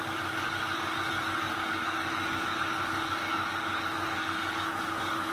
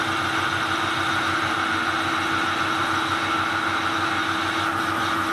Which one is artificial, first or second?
first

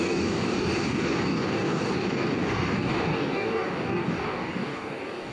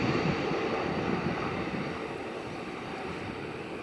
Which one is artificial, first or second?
first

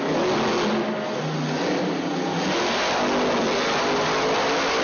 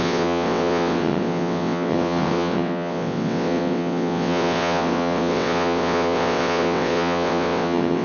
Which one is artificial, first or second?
second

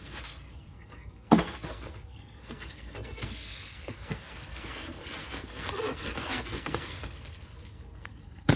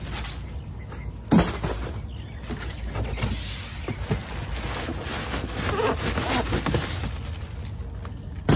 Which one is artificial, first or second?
first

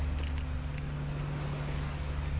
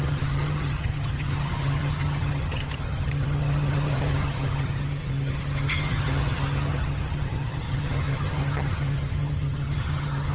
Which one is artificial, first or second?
second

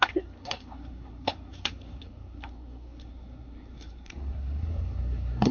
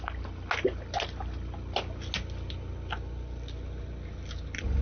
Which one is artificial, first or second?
first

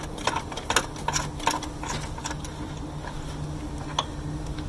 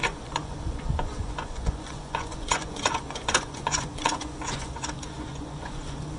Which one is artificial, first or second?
second